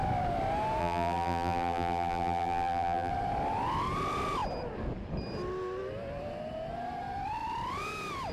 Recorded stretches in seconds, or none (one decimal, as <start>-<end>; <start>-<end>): 0.0-0.8; 3.1-8.3